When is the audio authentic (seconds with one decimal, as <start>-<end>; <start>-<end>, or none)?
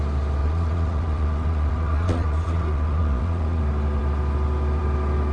0.0-0.4; 3.6-5.3